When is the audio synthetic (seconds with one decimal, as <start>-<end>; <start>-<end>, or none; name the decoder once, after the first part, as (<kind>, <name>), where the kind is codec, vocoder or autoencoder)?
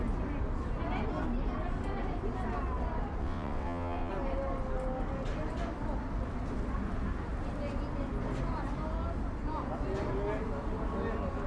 3.2-4.1 (vocoder, WaveNeXt)